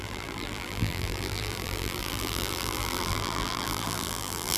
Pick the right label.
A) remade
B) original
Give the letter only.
A